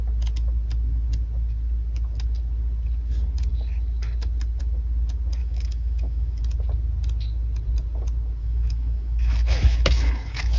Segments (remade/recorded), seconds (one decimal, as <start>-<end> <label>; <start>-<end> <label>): 0.0-5.4 recorded; 5.4-6.4 remade; 6.4-8.4 recorded; 8.4-10.6 remade